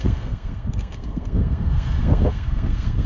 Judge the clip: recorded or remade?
remade